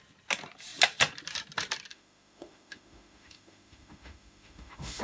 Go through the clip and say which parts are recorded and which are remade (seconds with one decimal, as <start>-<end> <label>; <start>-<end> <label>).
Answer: 0.0-1.9 recorded; 1.9-5.0 remade